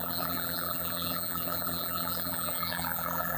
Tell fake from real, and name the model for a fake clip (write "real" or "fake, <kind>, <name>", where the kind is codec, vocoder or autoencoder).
fake, vocoder, BigVGAN v2